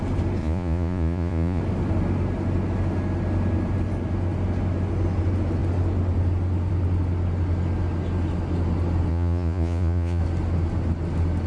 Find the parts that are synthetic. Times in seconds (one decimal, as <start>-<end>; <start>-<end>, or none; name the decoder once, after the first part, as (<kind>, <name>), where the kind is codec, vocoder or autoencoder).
0.4-1.6 (vocoder, Vocos); 9.1-10.2